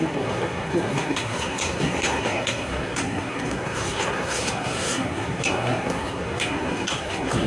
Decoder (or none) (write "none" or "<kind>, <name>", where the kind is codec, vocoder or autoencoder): codec, SNAC